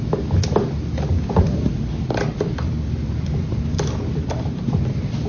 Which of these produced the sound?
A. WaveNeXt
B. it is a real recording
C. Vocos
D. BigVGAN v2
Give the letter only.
D